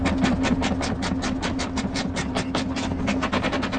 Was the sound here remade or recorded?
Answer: recorded